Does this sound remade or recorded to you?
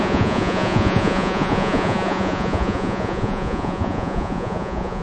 remade